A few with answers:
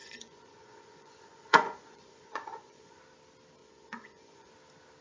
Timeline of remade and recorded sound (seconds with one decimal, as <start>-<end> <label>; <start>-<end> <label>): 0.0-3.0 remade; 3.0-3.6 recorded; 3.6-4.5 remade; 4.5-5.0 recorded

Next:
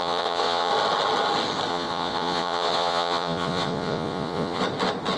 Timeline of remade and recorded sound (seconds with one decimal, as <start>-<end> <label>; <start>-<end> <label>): 0.0-0.7 remade; 0.7-1.7 recorded; 1.7-4.6 remade; 4.6-5.2 recorded

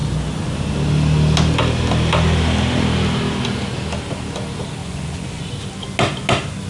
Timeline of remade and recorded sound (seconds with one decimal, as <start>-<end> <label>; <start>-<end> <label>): 0.0-4.8 recorded; 4.8-5.5 remade; 5.5-6.7 recorded